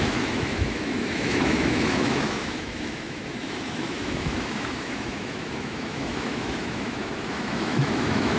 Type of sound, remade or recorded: remade